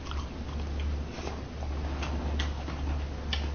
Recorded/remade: recorded